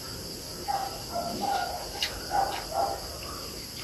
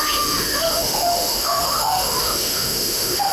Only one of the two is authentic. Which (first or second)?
first